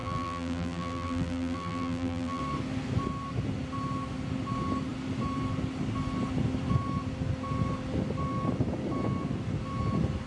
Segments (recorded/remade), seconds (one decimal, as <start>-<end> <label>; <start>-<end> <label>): 0.0-2.4 remade; 2.4-10.3 recorded